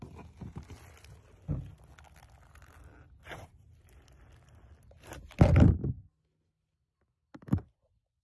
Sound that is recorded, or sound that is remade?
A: recorded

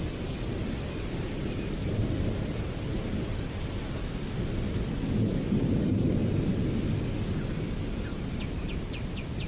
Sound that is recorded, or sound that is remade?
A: recorded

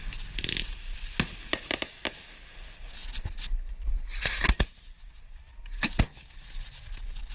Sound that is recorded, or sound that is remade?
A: recorded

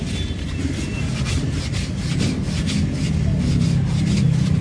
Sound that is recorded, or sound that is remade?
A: recorded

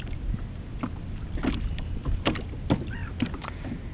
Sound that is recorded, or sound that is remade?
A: recorded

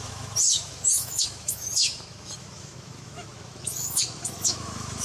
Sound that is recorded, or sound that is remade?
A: remade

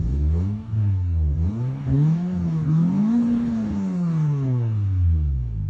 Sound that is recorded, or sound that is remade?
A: remade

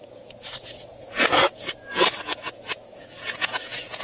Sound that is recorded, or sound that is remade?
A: remade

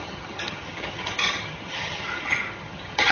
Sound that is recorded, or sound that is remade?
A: remade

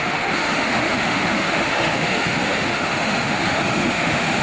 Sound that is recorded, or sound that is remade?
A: remade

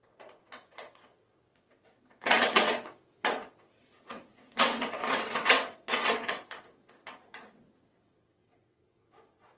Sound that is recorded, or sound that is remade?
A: remade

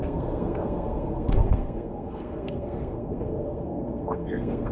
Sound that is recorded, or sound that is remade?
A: remade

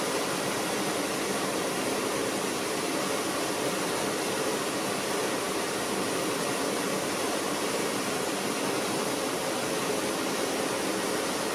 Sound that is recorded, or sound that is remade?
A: recorded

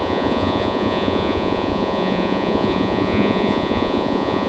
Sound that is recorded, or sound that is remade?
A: remade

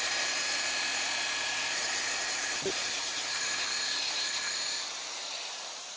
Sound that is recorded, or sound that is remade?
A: remade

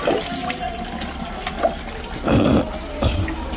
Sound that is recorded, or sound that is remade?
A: recorded